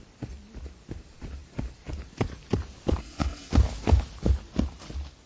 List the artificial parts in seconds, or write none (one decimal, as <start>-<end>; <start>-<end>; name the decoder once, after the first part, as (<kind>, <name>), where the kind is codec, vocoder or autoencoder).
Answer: 3.0-3.5 (codec, SNAC)